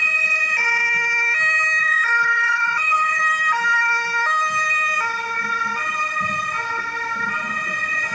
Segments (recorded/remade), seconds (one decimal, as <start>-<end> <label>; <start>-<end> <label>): 0.0-0.8 remade; 0.8-1.8 recorded; 1.8-3.2 remade; 3.2-7.5 recorded; 7.5-8.1 remade